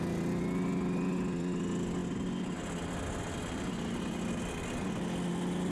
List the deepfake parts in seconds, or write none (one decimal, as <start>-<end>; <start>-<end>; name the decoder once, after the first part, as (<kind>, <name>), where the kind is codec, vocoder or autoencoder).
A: none